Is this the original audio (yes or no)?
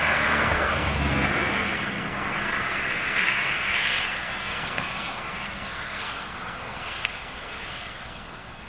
no